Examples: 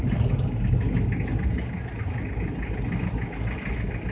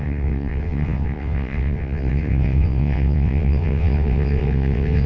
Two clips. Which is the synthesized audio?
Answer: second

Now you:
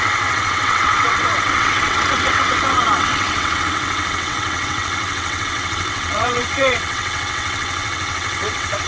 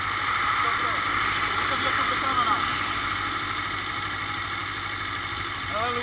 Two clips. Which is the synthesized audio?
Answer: first